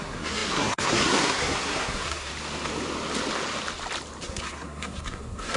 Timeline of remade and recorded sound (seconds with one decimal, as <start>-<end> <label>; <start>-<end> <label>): 0.0-2.3 remade; 2.3-4.2 recorded; 4.2-5.6 remade